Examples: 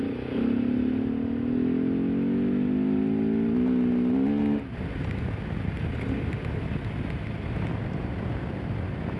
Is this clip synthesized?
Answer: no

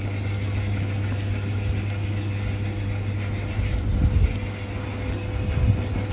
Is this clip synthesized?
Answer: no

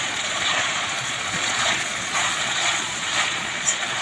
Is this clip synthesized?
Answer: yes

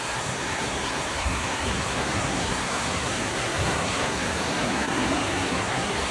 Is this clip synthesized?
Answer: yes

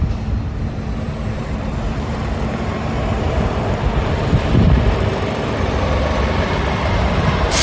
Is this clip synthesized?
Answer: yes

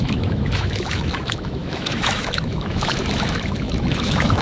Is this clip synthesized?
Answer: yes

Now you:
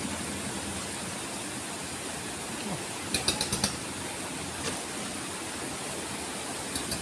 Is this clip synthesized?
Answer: no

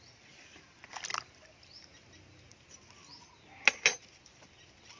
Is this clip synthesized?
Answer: no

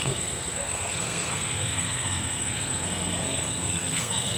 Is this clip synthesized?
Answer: yes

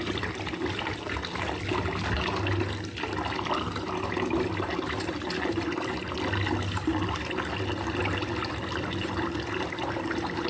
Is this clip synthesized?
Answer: no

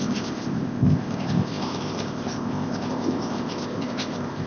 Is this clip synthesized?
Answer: yes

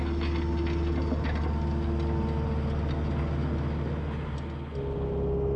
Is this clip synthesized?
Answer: no